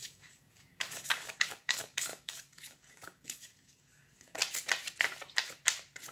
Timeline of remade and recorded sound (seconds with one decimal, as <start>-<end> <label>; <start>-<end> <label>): 0.0-4.4 remade; 4.4-6.1 recorded